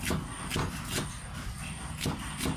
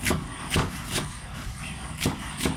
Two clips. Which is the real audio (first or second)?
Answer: first